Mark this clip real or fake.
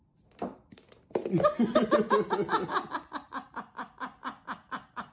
fake